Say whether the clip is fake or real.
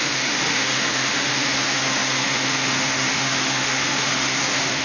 fake